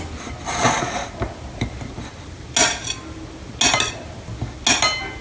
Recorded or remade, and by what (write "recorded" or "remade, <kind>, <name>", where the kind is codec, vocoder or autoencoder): recorded